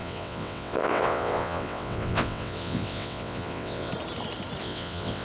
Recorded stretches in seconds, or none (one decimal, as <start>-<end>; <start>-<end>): 3.9-4.6